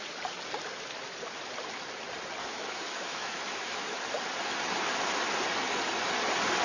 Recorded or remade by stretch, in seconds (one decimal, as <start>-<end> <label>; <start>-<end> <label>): 0.0-2.4 recorded; 2.4-4.0 remade; 4.0-6.6 recorded